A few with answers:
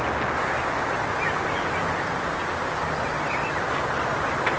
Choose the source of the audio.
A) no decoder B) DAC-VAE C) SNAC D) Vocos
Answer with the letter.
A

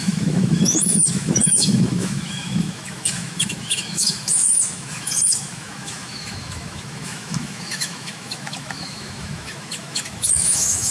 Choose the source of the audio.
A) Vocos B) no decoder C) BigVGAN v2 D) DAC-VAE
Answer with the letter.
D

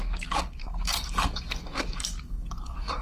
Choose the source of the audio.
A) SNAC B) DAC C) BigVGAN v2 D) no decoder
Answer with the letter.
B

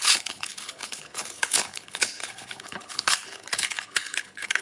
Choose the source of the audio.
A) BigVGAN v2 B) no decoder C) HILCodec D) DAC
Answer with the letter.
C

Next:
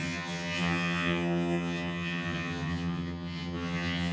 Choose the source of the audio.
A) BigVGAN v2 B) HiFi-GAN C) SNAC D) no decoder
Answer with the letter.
B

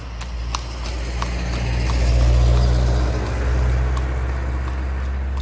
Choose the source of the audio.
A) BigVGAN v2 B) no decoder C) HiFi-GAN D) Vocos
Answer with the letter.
B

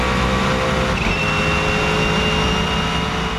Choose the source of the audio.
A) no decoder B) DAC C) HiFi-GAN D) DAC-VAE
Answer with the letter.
A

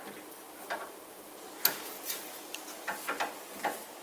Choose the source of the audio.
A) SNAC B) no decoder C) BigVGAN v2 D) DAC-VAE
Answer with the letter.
B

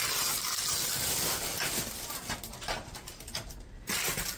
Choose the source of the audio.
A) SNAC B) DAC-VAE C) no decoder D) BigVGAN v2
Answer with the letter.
C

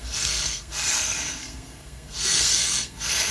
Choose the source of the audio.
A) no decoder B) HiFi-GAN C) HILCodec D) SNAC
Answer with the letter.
D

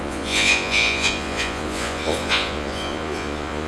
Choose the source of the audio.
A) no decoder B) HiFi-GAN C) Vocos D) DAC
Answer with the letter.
C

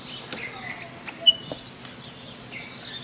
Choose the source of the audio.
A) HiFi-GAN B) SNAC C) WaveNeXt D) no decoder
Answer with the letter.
D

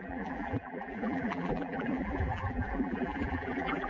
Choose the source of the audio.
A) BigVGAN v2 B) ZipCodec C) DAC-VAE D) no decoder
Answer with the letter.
A